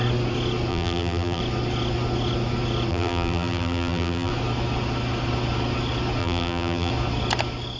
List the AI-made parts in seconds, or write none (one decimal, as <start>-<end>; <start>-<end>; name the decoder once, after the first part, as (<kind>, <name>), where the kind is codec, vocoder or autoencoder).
0.7-1.4 (vocoder, BigVGAN v2); 2.9-4.3; 6.2-6.9